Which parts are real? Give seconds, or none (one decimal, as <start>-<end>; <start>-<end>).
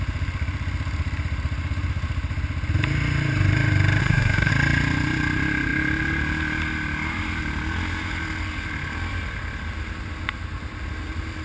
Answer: 0.0-4.0; 4.5-11.4